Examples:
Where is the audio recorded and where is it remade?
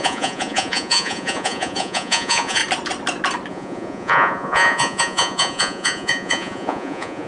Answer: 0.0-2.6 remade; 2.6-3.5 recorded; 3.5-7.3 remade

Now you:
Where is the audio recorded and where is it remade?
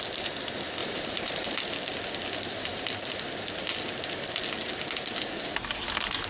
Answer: 0.0-0.8 recorded; 0.8-1.6 remade; 1.6-6.3 recorded